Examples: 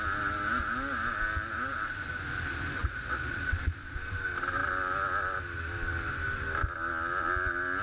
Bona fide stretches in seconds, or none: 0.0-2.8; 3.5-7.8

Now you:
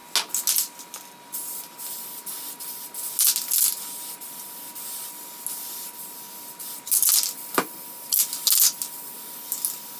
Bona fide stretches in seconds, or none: 0.0-10.0

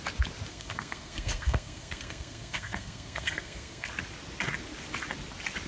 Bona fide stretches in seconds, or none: 0.0-0.5; 3.9-5.7

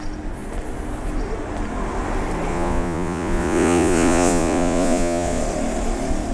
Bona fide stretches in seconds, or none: 0.0-2.5; 5.4-6.3

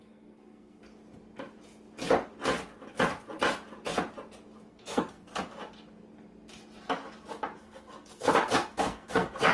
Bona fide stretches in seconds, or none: 0.8-4.7; 5.3-7.6

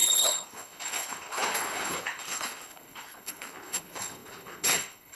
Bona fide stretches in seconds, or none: none

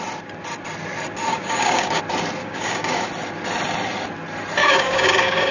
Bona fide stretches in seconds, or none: 0.0-1.3; 2.0-2.4; 3.1-4.6